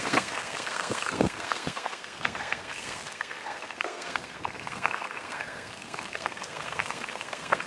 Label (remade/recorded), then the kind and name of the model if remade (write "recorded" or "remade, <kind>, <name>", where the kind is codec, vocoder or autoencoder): remade, codec, SNAC